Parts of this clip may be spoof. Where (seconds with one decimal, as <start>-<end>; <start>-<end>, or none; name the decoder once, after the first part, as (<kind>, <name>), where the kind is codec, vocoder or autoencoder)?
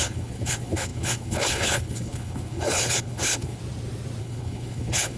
0.0-3.6 (codec, HILCodec); 4.2-5.2